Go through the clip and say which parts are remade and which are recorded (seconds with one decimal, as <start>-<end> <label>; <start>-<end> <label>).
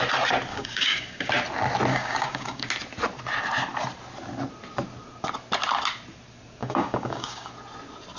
0.0-0.5 recorded; 0.5-1.3 remade; 1.3-1.9 recorded; 1.9-2.7 remade; 2.7-6.6 recorded; 6.6-7.5 remade; 7.5-8.2 recorded